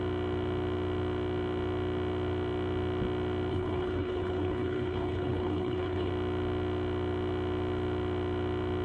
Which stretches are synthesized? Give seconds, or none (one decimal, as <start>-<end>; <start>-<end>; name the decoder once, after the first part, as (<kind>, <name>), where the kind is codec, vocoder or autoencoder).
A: 3.5-6.1 (codec, HILCodec)